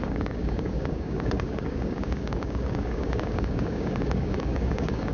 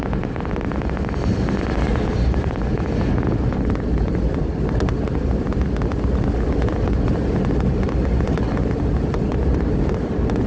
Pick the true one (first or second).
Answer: second